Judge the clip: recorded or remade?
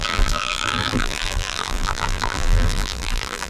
remade